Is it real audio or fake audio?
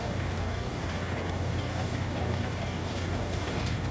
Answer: fake